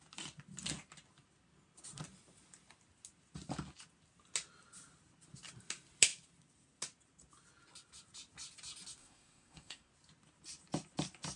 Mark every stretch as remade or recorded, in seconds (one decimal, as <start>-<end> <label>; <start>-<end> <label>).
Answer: 0.0-9.0 recorded; 9.0-9.9 remade; 9.9-11.4 recorded